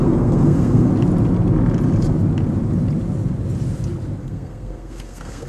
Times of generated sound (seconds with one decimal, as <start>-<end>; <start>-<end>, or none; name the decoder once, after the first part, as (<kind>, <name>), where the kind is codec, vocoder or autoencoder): 0.0-0.9 (codec, SNAC); 4.2-5.5